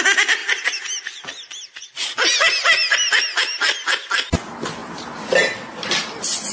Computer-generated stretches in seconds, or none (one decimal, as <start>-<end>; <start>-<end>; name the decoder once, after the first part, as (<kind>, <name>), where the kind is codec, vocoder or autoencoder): none